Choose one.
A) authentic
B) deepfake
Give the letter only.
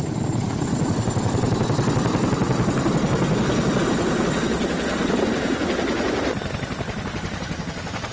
A